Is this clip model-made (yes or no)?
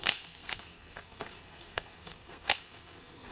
yes